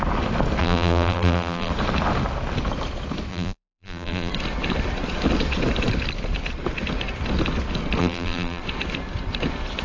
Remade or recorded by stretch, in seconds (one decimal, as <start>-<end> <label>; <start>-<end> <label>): 0.0-0.6 recorded; 0.6-1.7 remade; 1.7-3.3 recorded; 3.3-4.3 remade; 4.3-8.0 recorded; 8.0-8.6 remade; 8.6-9.8 recorded